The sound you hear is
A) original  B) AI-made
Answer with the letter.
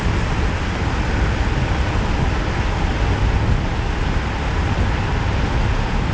A